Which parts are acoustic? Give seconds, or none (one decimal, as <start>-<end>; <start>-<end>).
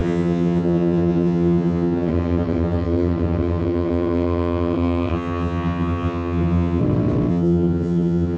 6.8-7.3